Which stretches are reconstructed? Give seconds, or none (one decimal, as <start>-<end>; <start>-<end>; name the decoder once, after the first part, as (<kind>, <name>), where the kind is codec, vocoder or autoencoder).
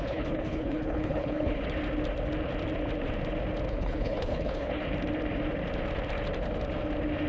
0.0-1.6 (codec, HILCodec); 3.7-4.8